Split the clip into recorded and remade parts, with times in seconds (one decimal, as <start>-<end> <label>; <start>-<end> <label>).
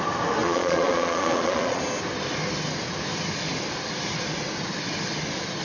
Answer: 0.0-0.4 recorded; 0.4-1.8 remade; 1.8-5.6 recorded